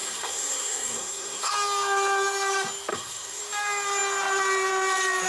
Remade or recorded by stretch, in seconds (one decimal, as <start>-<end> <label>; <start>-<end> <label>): 0.0-1.5 remade; 1.5-2.9 recorded; 2.9-3.4 remade; 3.4-5.3 recorded